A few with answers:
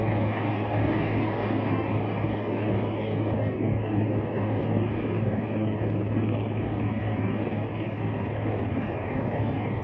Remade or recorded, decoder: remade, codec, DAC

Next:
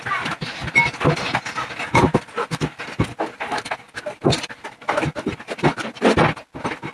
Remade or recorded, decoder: recorded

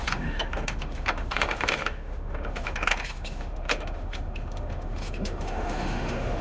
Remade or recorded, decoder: remade, autoencoder, DAC-VAE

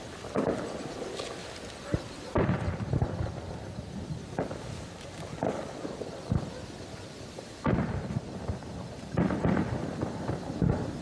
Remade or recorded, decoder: recorded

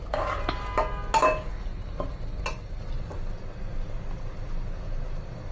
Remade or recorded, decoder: recorded